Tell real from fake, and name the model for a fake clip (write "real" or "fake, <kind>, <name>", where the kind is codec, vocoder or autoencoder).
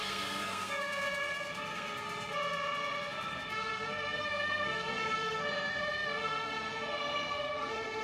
fake, codec, SNAC